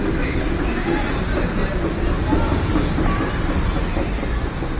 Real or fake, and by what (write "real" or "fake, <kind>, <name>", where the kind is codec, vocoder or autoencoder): real